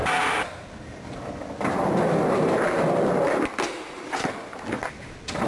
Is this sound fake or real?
real